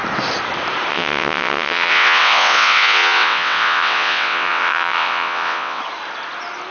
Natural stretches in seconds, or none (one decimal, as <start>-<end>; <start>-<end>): 0.0-0.9; 5.8-6.7